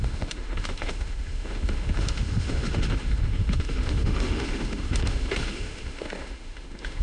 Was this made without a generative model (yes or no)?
no